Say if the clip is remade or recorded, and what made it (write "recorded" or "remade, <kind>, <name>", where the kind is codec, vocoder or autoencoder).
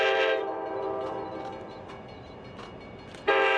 recorded